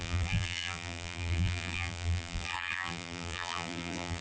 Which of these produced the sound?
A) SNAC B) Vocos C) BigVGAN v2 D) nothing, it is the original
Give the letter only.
C